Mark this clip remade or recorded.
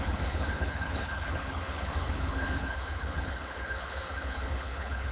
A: remade